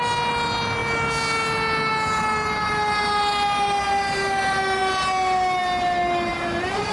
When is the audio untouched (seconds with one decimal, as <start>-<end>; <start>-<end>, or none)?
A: 0.0-6.3